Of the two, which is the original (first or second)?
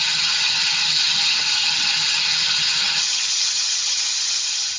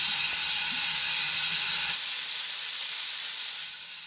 second